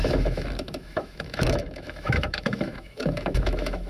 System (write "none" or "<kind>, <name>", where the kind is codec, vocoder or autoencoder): autoencoder, DAC-VAE